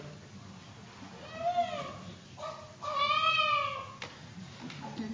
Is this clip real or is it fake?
real